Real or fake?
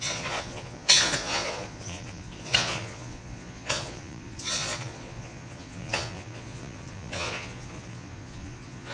fake